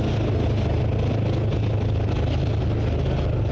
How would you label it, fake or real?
real